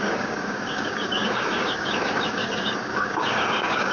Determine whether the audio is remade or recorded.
remade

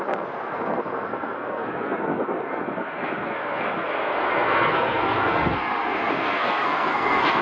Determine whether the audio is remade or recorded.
remade